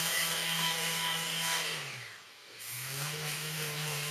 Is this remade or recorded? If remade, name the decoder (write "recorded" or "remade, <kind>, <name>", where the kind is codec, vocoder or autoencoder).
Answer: remade, codec, DAC